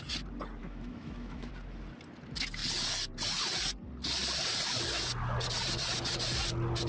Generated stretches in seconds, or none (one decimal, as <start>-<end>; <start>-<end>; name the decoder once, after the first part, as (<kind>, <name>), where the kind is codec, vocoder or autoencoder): 0.6-1.5 (autoencoder, DAC-VAE)